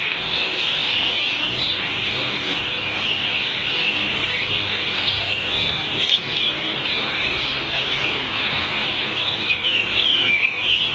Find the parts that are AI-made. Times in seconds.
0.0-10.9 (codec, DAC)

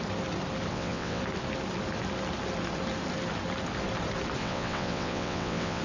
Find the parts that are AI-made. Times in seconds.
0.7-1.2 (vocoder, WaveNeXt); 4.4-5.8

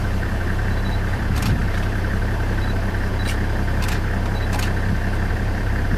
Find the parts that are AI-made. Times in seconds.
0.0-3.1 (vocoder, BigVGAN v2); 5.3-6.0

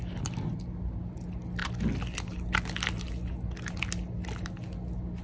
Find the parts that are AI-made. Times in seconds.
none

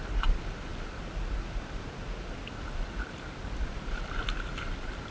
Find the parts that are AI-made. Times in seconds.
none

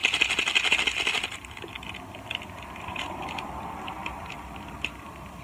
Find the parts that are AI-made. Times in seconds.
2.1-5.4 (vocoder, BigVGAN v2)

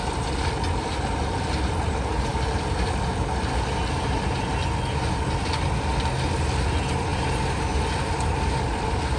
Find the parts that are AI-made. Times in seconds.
none

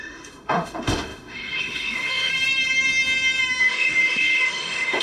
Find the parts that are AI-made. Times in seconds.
0.0-2.3 (autoencoder, DAC-VAE); 3.6-5.0